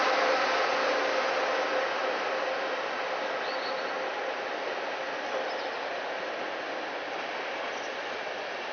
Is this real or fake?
real